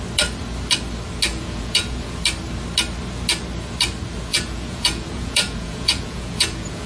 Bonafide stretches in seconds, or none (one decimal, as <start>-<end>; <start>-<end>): 0.0-1.3; 2.2-4.3